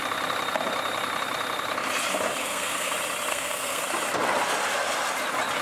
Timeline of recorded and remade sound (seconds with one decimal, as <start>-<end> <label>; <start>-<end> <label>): 0.0-2.4 recorded; 2.4-2.9 remade; 2.9-3.3 recorded; 3.3-3.8 remade; 3.8-5.6 recorded